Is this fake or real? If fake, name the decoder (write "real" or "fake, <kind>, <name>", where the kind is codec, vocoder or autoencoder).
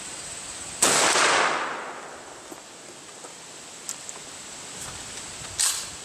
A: real